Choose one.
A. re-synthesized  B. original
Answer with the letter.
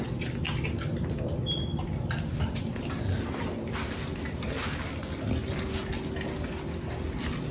B